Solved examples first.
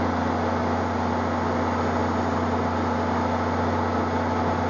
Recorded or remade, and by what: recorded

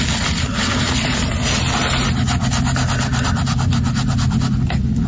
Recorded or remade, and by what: recorded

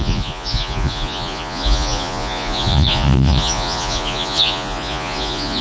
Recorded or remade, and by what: remade, vocoder, Vocos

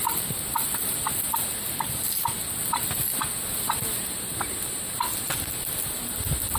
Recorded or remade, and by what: recorded